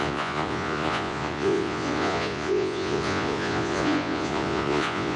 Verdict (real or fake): fake